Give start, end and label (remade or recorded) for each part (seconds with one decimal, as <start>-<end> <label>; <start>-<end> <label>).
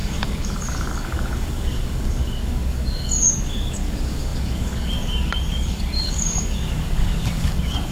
0.0-7.9 remade